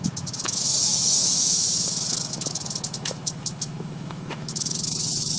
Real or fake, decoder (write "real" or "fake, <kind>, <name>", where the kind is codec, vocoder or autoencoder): fake, autoencoder, DAC-VAE